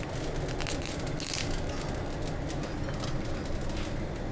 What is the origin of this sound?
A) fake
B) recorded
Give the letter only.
B